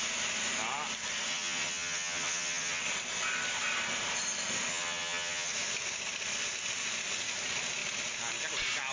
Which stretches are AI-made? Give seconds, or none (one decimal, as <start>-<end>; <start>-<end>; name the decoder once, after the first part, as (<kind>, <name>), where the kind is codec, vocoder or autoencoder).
1.3-2.8 (vocoder, HiFi-GAN); 4.7-5.5